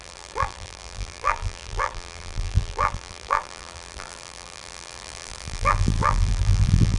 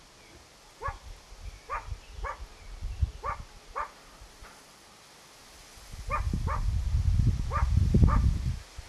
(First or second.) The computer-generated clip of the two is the first